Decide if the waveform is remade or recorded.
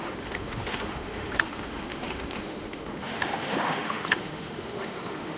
remade